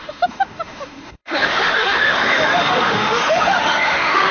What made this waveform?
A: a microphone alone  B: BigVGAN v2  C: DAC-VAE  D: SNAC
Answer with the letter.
C